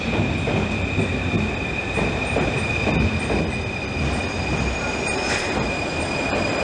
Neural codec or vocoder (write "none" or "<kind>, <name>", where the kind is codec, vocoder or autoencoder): vocoder, BigVGAN v2